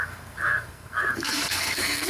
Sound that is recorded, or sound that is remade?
remade